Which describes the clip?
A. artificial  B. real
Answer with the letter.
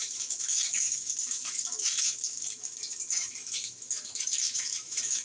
A